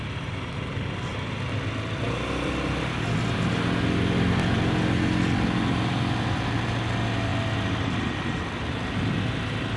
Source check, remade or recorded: recorded